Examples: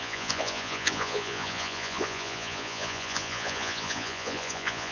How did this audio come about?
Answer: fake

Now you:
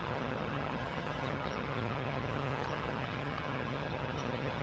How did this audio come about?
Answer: fake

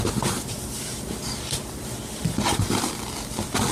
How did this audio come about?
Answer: real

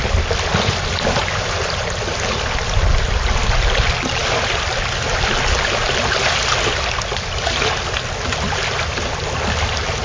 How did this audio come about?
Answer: real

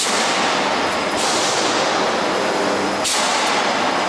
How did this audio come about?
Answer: real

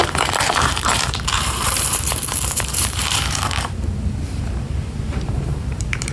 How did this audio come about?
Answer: fake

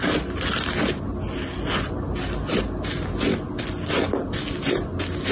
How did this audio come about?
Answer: real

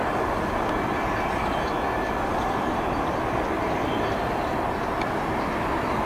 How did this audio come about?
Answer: real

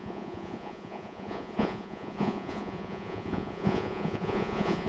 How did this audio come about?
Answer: fake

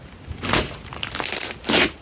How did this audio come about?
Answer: real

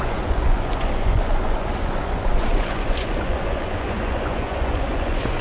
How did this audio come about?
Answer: fake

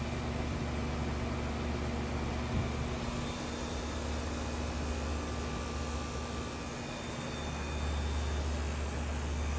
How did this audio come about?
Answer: real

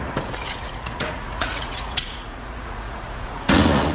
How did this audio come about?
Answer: fake